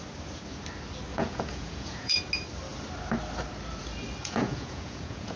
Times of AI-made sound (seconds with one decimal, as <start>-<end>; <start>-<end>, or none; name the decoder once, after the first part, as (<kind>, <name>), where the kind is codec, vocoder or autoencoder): 1.1-2.2 (vocoder, Vocos); 4.2-5.4